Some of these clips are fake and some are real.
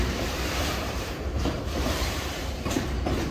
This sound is fake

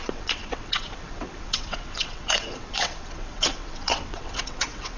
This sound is fake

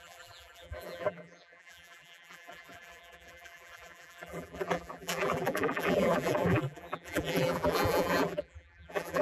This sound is fake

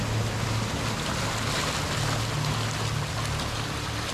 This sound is real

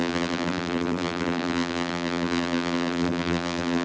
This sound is fake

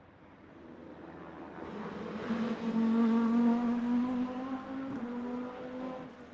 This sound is real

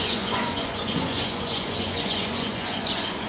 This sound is fake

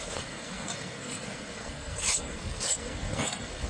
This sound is fake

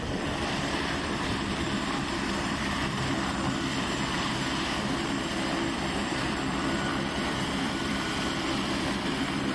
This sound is fake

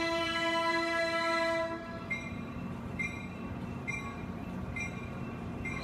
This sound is fake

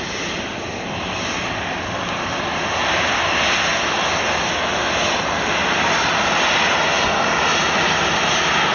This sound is real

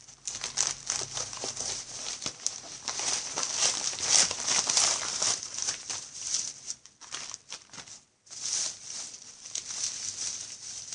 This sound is fake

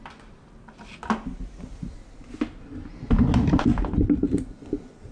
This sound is real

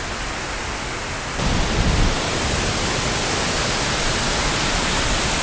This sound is real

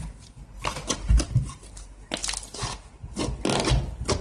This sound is real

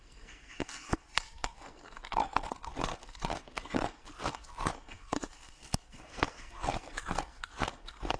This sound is fake